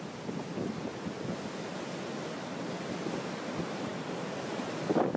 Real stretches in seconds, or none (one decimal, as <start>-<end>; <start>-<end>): 0.0-5.2